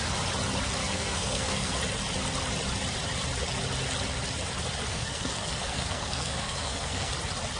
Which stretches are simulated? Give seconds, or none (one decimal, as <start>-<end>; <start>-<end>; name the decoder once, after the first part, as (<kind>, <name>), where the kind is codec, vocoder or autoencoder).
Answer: 0.8-1.8 (codec, SNAC); 4.9-7.1